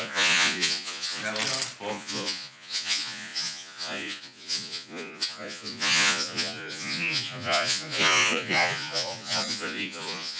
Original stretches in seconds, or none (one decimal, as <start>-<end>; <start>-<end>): 1.2-1.9